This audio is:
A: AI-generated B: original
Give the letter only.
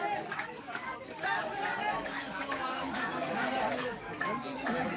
A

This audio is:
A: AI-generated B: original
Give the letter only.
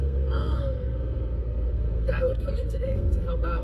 A